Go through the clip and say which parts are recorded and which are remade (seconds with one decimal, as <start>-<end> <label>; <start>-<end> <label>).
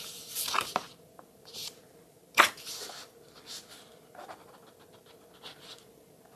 0.0-1.6 remade; 1.6-5.4 recorded; 5.4-6.4 remade